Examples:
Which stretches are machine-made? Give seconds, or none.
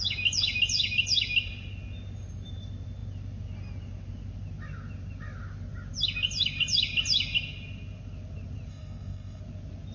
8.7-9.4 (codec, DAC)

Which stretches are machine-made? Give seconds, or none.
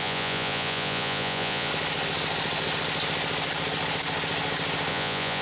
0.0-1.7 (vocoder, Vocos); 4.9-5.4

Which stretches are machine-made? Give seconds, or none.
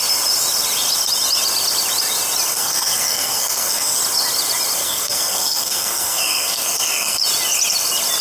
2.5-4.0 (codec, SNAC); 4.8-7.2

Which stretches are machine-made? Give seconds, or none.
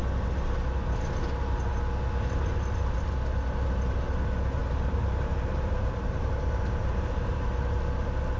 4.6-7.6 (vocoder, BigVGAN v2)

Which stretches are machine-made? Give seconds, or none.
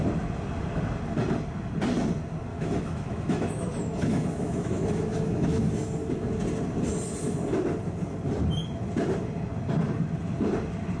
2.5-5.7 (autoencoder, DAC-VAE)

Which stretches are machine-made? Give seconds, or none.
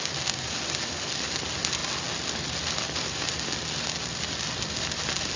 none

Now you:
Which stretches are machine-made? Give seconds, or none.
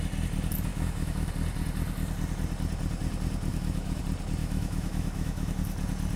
0.7-1.3 (autoencoder, DAC-VAE); 3.5-4.0; 4.4-5.6